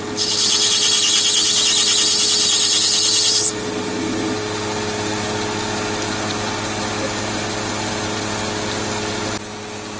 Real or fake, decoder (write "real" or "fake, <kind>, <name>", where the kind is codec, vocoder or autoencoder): real